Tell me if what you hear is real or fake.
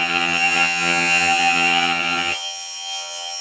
fake